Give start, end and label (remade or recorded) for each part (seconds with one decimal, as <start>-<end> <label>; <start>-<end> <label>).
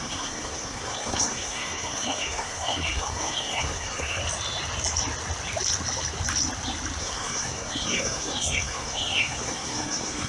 0.0-4.2 remade; 4.2-7.0 recorded; 7.0-10.3 remade